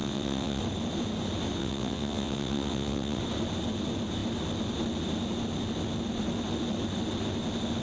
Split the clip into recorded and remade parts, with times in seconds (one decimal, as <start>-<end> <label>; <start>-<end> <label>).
0.0-0.6 remade; 0.6-1.6 recorded; 1.6-3.2 remade; 3.2-7.8 recorded